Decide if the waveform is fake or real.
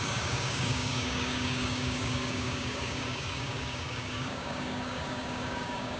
fake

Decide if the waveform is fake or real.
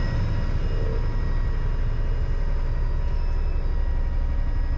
real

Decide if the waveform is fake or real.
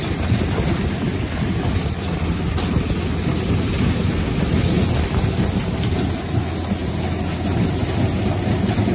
real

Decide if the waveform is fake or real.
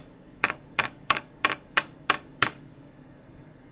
fake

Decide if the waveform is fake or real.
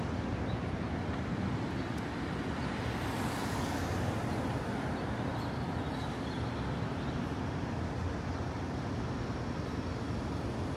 real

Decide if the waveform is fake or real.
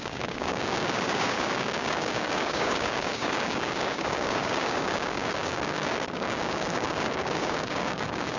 fake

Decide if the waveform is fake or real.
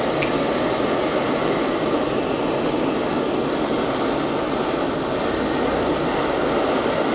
real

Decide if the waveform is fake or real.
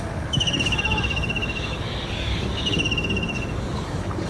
fake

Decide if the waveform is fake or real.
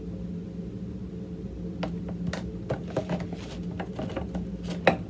real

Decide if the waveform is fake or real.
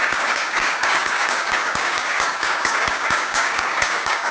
fake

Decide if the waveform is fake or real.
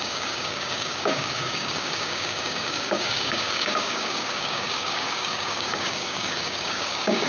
fake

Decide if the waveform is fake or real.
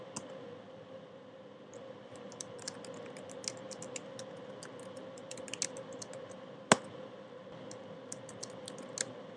real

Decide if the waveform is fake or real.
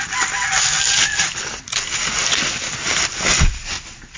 real